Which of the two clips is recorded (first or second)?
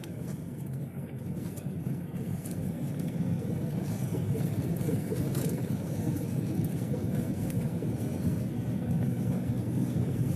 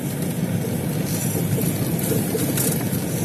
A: second